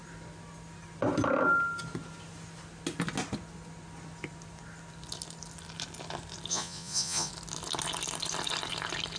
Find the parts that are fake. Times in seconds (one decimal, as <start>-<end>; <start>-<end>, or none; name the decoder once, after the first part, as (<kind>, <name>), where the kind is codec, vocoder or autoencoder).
6.5-7.3 (vocoder, Vocos)